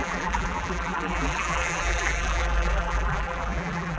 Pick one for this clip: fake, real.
fake